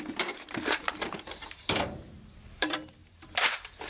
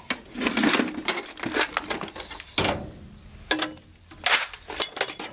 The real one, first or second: second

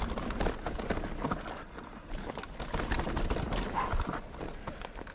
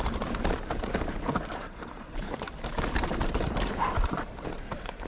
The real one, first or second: first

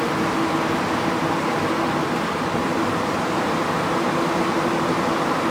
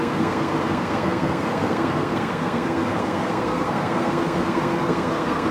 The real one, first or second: first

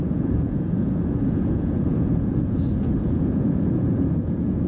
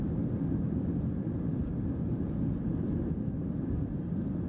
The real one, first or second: second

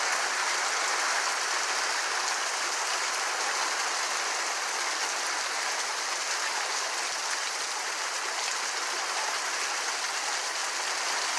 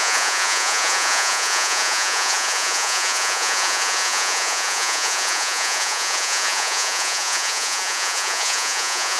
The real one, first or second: first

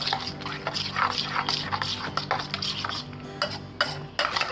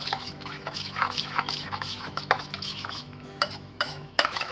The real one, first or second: first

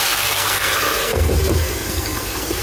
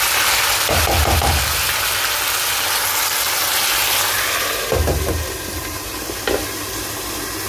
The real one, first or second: second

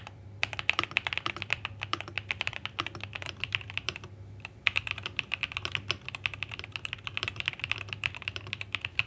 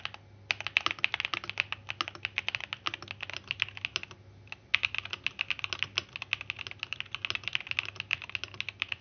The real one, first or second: second